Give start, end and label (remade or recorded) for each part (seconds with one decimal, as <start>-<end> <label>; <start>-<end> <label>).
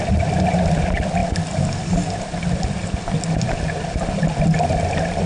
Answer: 0.0-5.3 recorded